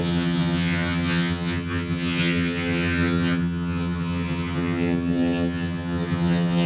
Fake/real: fake